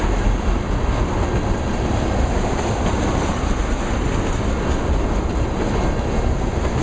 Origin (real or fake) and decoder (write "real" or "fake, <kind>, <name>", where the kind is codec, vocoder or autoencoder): real